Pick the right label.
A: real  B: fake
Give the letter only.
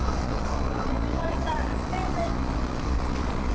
B